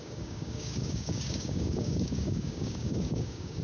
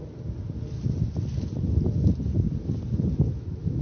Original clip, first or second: second